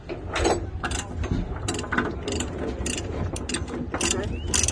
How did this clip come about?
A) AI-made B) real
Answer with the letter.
B